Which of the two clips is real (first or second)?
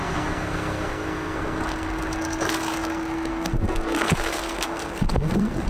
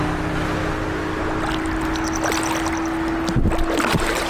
second